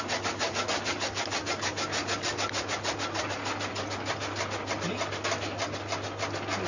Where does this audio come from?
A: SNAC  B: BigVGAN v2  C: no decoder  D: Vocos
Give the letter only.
C